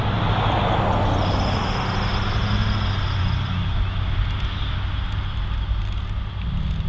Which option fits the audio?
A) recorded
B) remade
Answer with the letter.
A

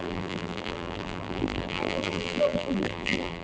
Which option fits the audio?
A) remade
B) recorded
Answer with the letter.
A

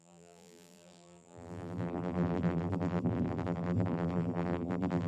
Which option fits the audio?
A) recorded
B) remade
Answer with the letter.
B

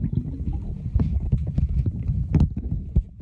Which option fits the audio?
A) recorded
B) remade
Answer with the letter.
A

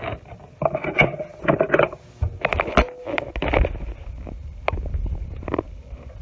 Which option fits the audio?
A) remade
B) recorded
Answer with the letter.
B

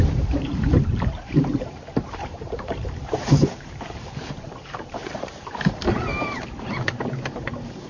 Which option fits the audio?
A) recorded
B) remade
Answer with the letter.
B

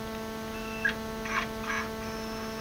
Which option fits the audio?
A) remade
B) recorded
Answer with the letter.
B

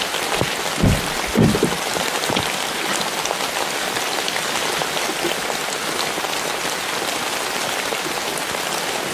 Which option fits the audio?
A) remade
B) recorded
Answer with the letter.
B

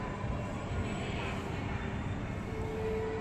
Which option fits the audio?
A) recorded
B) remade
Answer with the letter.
A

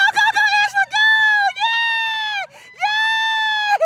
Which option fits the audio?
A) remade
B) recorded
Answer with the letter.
B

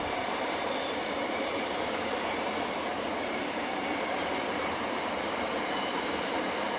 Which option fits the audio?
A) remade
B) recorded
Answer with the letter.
A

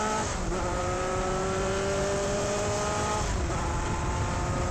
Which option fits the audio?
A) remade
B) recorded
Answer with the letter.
A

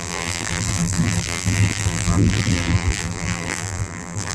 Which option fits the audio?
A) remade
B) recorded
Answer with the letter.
A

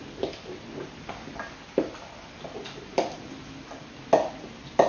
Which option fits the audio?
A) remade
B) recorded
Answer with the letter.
B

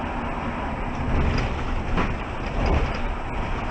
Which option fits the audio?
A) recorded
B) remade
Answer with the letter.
A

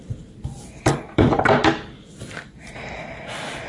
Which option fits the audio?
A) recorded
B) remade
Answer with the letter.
B